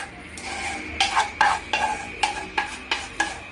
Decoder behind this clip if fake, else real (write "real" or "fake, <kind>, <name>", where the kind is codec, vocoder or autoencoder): real